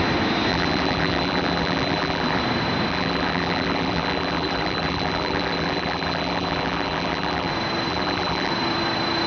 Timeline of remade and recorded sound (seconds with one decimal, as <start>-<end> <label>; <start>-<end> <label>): 0.0-0.5 recorded; 0.5-2.4 remade; 2.4-2.9 recorded; 2.9-7.5 remade; 7.5-7.9 recorded; 7.9-8.5 remade; 8.5-9.3 recorded